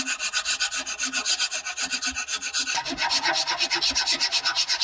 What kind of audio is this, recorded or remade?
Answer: recorded